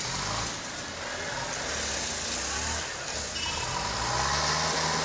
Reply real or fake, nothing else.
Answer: real